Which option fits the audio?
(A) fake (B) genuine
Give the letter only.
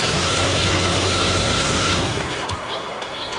A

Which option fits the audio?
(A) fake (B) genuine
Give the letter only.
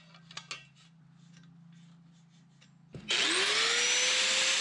B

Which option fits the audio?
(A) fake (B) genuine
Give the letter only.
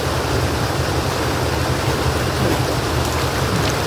A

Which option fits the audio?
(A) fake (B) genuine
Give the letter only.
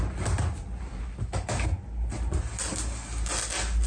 B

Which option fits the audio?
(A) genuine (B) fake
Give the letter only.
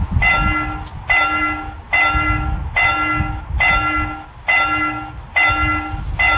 A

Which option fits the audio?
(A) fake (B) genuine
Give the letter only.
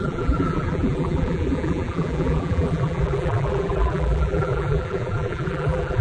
A